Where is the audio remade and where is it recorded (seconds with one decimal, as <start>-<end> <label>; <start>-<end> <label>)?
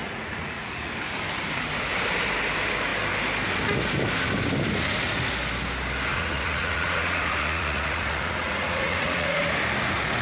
0.0-0.9 remade; 0.9-6.1 recorded; 6.1-9.4 remade; 9.4-10.2 recorded